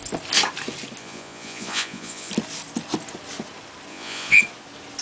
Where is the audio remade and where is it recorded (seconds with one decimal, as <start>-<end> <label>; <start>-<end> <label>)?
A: 0.0-1.0 recorded; 1.0-2.3 remade; 2.3-3.9 recorded; 3.9-4.4 remade; 4.4-5.0 recorded

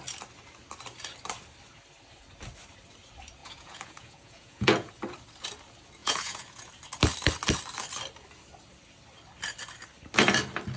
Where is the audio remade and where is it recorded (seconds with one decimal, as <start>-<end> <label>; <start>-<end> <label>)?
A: 0.0-3.4 recorded; 3.4-4.9 remade; 4.9-6.0 recorded; 6.0-6.7 remade; 6.7-10.8 recorded

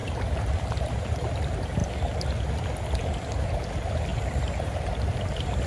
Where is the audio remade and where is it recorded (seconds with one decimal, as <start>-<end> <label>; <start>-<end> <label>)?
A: 0.0-1.3 remade; 1.3-4.1 recorded; 4.1-5.2 remade; 5.2-5.7 recorded

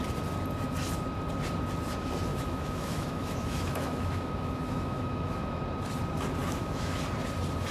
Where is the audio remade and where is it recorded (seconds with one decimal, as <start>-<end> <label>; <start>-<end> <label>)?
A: 0.0-2.3 recorded; 2.3-5.6 remade; 5.6-6.4 recorded; 6.4-7.0 remade; 7.0-7.7 recorded

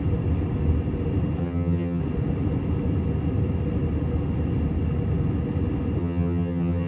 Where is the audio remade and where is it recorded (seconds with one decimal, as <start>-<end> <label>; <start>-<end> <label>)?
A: 0.0-1.4 recorded; 1.4-2.0 remade; 2.0-6.0 recorded; 6.0-6.9 remade

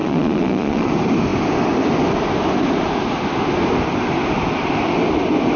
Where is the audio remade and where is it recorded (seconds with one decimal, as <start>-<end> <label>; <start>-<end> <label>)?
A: 0.0-0.9 remade; 0.9-5.6 recorded

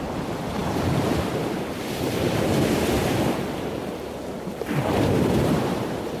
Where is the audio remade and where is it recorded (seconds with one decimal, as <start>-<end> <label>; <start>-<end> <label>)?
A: 0.0-6.2 recorded

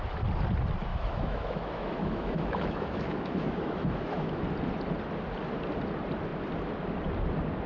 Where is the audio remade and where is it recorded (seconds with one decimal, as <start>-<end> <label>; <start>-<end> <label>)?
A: 0.0-0.9 recorded; 0.9-4.4 remade; 4.4-7.7 recorded